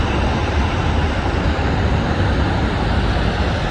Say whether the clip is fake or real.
real